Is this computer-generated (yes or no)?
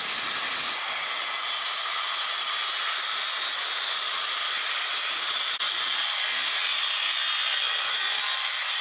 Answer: no